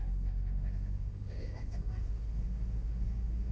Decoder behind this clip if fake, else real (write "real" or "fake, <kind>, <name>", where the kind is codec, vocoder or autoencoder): fake, autoencoder, DAC-VAE